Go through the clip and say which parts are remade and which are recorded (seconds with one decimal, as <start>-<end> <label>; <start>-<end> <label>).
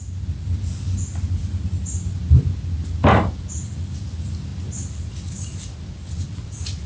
0.0-6.9 recorded